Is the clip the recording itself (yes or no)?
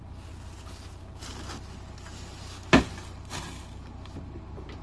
yes